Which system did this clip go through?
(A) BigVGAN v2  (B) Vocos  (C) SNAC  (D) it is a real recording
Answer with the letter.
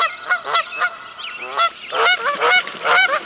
A